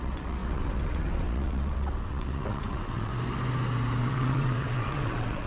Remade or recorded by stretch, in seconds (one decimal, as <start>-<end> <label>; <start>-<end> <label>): 0.0-3.1 remade; 3.1-4.0 recorded; 4.0-5.5 remade